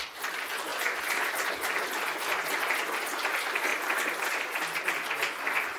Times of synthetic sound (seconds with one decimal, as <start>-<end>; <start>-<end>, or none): 0.7-1.5; 3.7-4.8